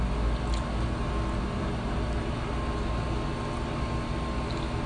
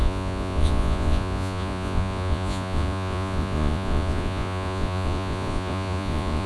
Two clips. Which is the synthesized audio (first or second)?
second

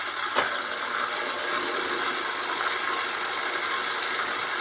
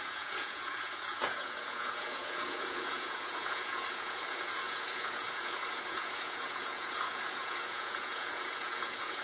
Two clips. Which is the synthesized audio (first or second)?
second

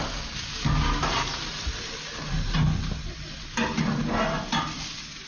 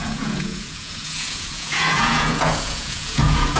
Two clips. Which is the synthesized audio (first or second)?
second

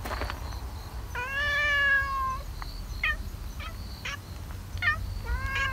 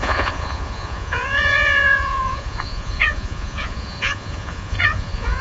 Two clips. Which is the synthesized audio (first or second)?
second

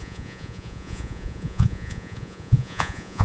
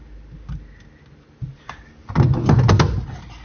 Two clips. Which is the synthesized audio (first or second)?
first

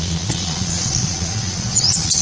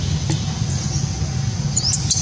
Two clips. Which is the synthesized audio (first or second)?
first